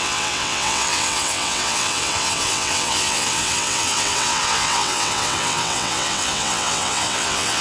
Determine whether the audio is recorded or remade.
remade